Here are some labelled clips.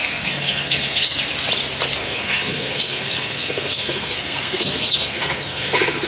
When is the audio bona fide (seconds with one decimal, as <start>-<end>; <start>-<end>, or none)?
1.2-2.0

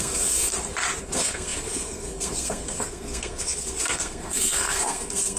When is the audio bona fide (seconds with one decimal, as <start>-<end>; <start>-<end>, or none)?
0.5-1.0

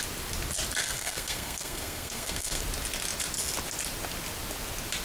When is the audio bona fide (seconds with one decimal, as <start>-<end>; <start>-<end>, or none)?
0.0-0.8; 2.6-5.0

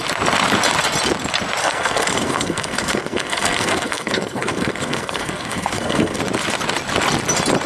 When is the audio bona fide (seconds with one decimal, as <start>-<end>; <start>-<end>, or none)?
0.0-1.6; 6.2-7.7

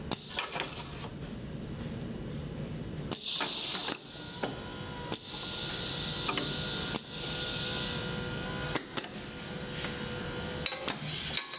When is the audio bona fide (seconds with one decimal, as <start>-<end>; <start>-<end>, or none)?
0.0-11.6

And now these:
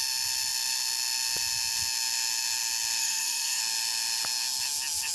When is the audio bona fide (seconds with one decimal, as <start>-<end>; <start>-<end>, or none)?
0.0-3.0; 3.6-5.1